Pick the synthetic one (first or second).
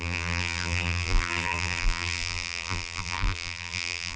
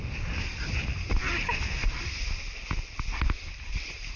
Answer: first